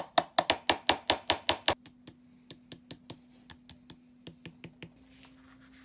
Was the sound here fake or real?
real